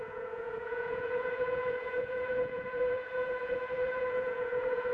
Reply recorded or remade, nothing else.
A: remade